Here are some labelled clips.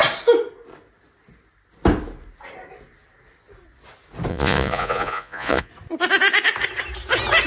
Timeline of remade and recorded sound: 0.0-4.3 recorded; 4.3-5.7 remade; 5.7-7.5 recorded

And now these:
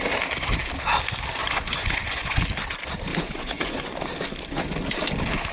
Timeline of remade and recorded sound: 0.0-1.4 recorded; 1.4-2.4 remade; 2.4-3.1 recorded; 3.1-4.0 remade; 4.0-5.5 recorded

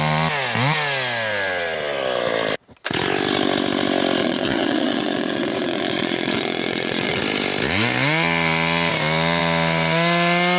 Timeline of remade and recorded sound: 0.0-4.2 recorded; 4.2-7.2 remade; 7.2-10.6 recorded

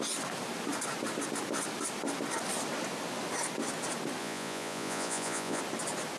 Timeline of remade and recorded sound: 0.0-4.2 recorded; 4.2-5.6 remade; 5.6-6.2 recorded

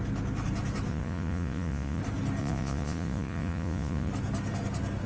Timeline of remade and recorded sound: 0.0-0.9 recorded; 0.9-2.0 remade; 2.0-2.4 recorded; 2.4-4.1 remade; 4.1-5.1 recorded

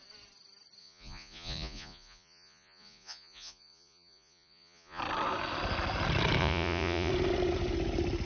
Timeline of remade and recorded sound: 0.0-0.8 recorded; 0.8-5.0 remade; 5.0-6.4 recorded; 6.4-7.1 remade; 7.1-8.3 recorded